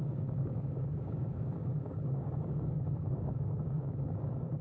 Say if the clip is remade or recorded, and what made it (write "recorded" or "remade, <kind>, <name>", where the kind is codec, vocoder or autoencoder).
remade, codec, DAC